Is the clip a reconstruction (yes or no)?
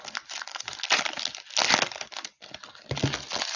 no